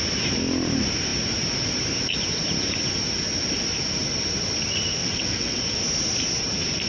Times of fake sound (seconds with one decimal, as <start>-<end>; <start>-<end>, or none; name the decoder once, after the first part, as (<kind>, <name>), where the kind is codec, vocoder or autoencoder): 5.0-5.6 (vocoder, WaveNeXt)